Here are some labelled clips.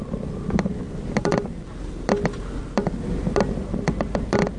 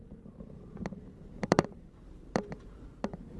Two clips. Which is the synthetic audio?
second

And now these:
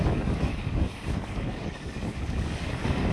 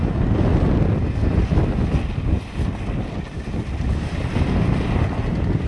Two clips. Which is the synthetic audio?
first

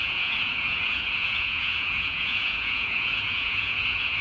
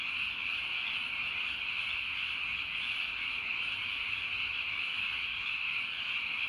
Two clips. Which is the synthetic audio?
first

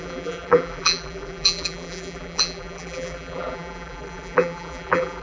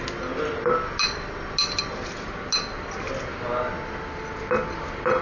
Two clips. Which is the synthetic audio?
first